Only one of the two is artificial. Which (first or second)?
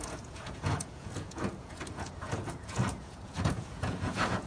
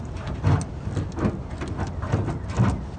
first